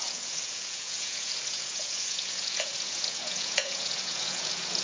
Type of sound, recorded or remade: remade